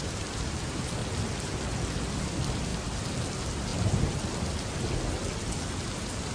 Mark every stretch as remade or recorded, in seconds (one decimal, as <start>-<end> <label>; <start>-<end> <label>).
0.0-1.0 remade; 1.0-2.2 recorded; 2.2-2.7 remade; 2.7-3.2 recorded; 3.2-3.7 remade; 3.7-5.6 recorded; 5.6-6.3 remade